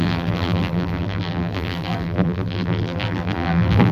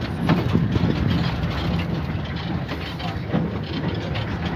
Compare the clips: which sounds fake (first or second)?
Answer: first